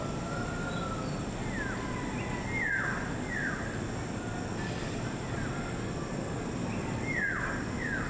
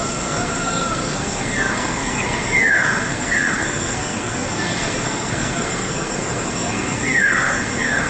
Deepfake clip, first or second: second